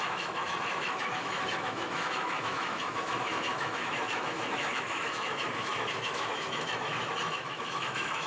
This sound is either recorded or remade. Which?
remade